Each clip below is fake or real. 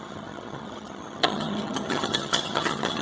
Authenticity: fake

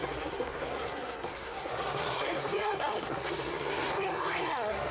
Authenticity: fake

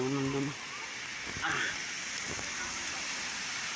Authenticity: real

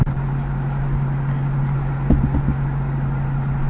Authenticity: real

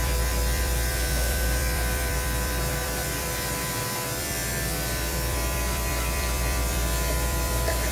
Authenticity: fake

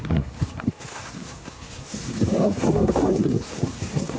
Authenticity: fake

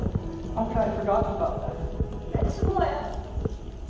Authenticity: real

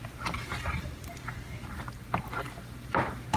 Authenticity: fake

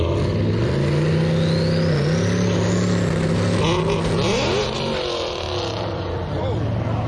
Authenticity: real